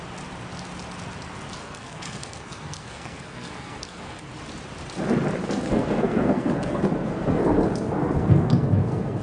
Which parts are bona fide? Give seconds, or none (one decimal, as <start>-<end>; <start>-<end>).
0.0-1.6; 4.2-5.4